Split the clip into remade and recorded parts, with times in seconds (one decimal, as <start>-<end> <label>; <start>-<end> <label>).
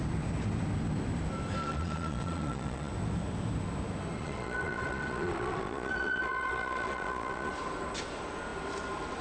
0.0-1.6 recorded; 1.6-2.9 remade; 2.9-4.2 recorded; 4.2-7.5 remade; 7.5-9.2 recorded